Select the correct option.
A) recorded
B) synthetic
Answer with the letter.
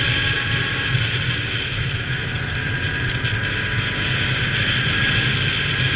A